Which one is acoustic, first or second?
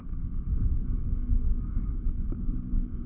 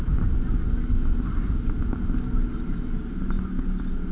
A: second